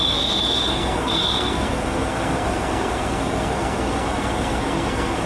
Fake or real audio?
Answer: fake